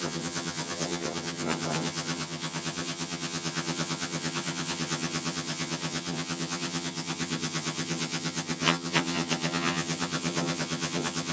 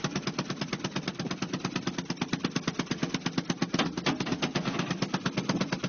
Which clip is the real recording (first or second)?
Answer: second